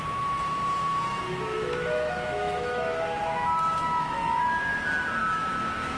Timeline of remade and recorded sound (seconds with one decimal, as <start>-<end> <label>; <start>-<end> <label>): 0.0-4.7 remade; 4.7-5.2 recorded; 5.2-6.0 remade